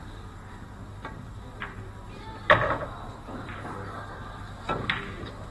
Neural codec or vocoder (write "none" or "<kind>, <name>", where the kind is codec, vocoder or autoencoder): none